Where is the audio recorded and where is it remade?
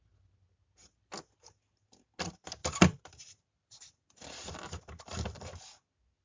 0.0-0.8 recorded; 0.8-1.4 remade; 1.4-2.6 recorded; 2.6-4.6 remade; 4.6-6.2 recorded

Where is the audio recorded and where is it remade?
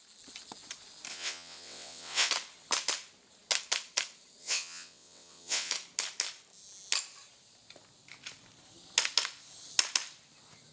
0.0-1.1 recorded; 1.1-2.3 remade; 2.3-4.4 recorded; 4.4-5.7 remade; 5.7-10.7 recorded